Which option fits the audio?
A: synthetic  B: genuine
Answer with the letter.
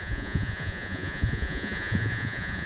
A